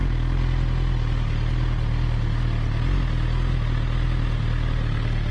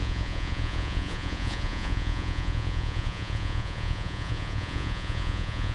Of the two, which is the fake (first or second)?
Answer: second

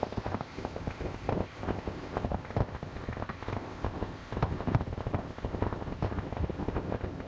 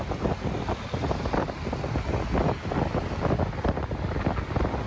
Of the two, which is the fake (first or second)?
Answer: first